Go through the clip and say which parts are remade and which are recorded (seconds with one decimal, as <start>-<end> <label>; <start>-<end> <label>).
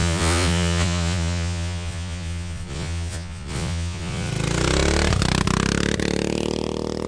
0.0-4.3 remade; 4.3-7.1 recorded